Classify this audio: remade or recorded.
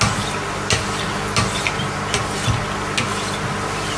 recorded